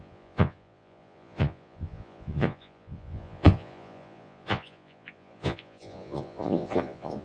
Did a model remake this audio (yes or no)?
yes